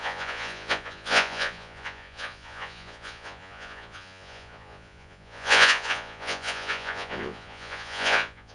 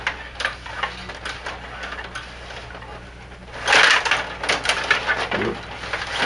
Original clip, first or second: second